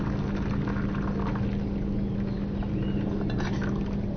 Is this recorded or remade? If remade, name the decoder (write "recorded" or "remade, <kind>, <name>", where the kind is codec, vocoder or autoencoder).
recorded